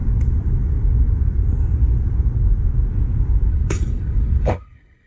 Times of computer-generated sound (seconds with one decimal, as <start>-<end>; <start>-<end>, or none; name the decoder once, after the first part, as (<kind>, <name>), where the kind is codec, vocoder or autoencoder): 3.5-5.1 (codec, HILCodec)